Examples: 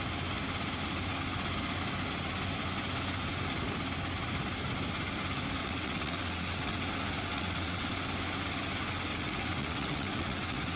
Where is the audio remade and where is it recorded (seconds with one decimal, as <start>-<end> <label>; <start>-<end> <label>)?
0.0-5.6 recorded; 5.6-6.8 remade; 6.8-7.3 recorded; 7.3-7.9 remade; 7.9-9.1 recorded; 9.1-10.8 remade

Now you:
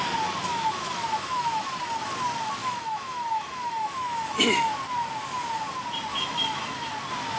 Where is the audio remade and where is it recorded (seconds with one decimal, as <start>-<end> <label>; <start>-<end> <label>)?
0.0-0.4 recorded; 0.4-1.7 remade; 1.7-2.6 recorded; 2.6-4.7 remade; 4.7-6.1 recorded; 6.1-6.9 remade; 6.9-7.4 recorded

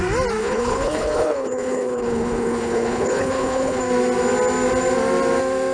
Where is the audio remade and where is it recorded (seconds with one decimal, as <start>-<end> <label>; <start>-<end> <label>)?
0.0-0.4 recorded; 0.4-3.8 remade; 3.8-5.7 recorded

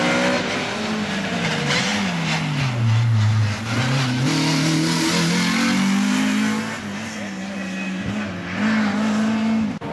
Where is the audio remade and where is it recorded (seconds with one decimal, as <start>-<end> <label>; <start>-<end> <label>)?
0.0-9.9 recorded

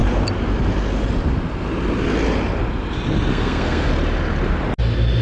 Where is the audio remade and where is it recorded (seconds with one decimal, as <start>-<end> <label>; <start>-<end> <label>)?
0.0-3.3 recorded; 3.3-3.9 remade; 3.9-5.2 recorded

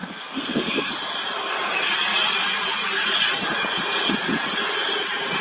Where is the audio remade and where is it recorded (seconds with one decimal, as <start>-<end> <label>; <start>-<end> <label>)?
0.0-0.9 remade; 0.9-5.4 recorded

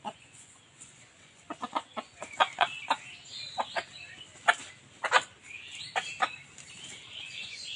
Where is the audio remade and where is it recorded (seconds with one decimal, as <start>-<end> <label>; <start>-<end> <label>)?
0.0-2.7 remade; 2.7-7.2 recorded; 7.2-7.8 remade